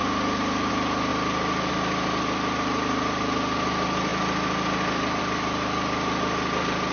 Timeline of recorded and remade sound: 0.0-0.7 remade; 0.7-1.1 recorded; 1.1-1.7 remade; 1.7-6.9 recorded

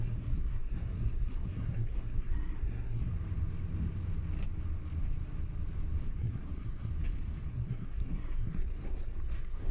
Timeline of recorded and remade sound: 0.0-3.1 remade; 3.1-6.2 recorded; 6.2-6.9 remade; 6.9-7.5 recorded; 7.5-9.7 remade